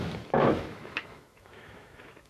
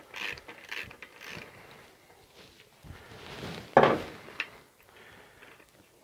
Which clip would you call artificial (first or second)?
first